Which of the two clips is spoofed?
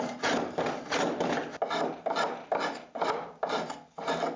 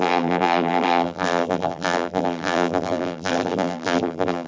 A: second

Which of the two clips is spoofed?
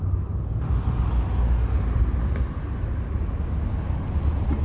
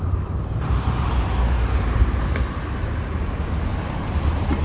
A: second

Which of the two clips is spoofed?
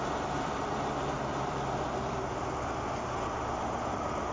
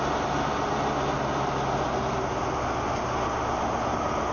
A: first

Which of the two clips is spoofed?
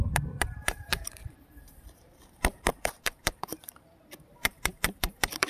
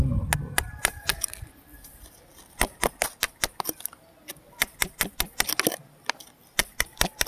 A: first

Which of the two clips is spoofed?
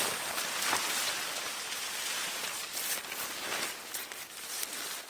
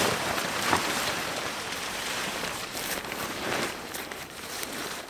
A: second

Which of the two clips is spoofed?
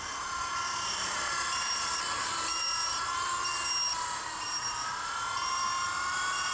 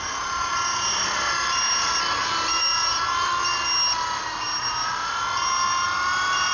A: first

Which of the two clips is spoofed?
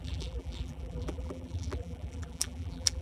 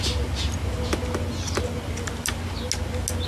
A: first